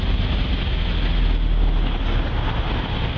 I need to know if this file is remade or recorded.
recorded